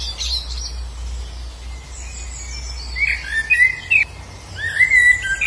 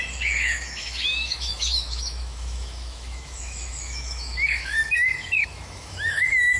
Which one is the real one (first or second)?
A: first